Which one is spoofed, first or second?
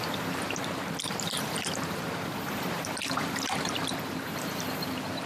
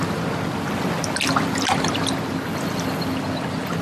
first